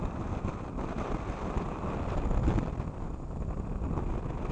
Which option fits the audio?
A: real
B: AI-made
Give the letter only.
A